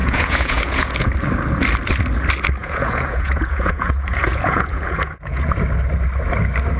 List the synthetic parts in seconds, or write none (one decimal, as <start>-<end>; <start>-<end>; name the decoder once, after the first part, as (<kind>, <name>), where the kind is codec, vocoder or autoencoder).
0.0-1.1 (vocoder, Vocos); 2.6-5.5